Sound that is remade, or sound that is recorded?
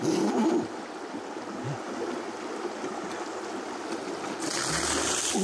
recorded